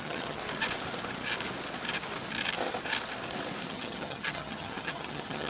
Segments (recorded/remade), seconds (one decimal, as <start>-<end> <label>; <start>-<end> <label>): 0.0-0.4 remade; 0.4-3.7 recorded; 3.7-5.5 remade